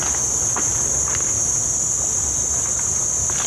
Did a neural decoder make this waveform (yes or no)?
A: no